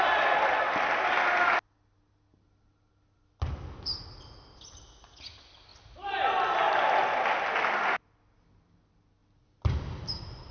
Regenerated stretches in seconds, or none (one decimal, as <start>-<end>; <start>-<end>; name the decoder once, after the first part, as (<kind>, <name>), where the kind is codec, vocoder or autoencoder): none